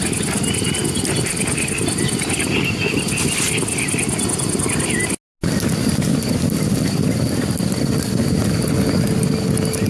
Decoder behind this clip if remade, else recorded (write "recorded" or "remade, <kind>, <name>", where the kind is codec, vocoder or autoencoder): recorded